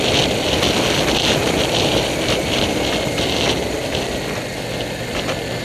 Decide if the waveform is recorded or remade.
recorded